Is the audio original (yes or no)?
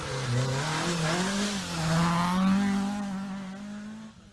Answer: yes